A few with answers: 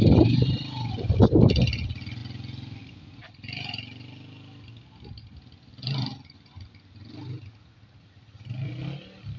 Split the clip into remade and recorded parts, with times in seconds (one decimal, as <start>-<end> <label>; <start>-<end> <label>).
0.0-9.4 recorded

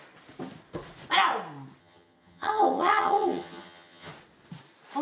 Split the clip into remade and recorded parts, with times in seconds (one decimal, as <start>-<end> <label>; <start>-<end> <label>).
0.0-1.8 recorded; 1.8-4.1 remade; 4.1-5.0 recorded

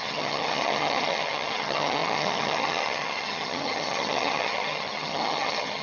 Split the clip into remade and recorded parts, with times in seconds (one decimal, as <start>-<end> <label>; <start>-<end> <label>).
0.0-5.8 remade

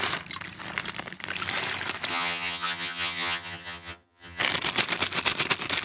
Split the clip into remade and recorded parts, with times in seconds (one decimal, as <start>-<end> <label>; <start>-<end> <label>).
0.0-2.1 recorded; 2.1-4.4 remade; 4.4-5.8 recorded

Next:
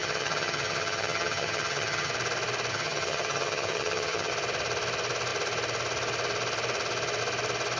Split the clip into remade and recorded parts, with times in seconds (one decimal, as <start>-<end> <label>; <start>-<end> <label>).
0.0-2.1 remade; 2.1-2.7 recorded; 2.7-4.3 remade; 4.3-7.8 recorded

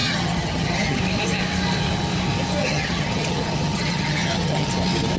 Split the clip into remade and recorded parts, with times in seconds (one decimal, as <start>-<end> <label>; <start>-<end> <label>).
0.0-1.0 remade; 1.0-2.6 recorded; 2.6-4.7 remade; 4.7-5.2 recorded

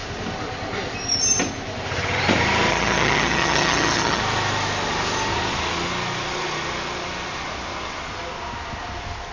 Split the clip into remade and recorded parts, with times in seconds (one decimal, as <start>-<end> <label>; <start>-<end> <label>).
0.0-2.7 recorded; 2.7-4.2 remade; 4.2-9.3 recorded